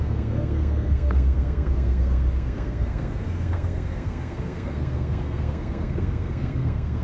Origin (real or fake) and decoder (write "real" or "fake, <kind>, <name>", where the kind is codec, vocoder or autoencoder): fake, codec, SNAC